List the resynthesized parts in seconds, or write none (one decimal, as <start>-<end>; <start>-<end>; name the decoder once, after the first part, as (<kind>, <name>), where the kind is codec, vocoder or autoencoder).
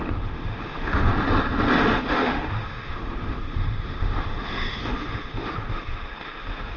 0.0-1.1 (autoencoder, DAC-VAE); 2.0-6.8